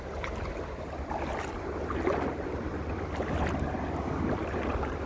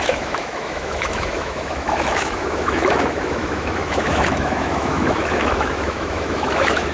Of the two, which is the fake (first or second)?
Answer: second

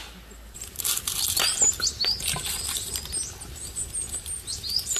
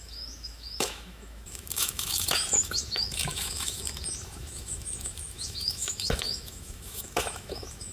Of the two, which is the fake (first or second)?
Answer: second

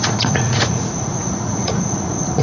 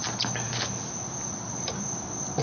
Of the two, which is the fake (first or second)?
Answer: first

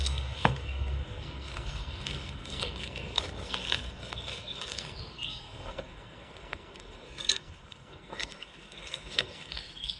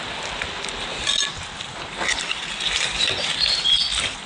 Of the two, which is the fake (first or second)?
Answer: first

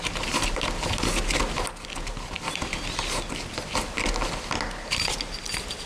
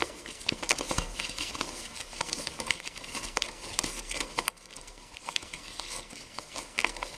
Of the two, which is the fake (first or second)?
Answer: second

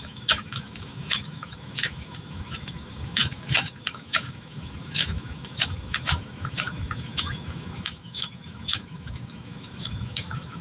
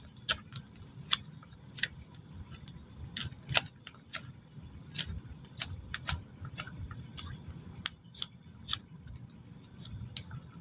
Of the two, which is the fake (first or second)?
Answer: first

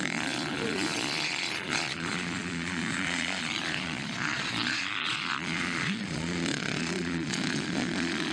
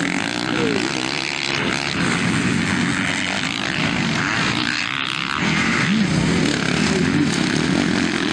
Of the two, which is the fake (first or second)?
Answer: first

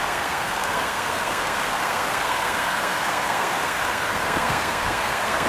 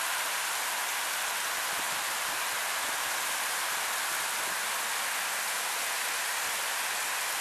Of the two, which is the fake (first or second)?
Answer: first